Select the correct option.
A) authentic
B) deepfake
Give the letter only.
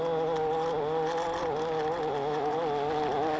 A